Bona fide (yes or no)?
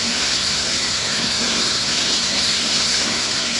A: no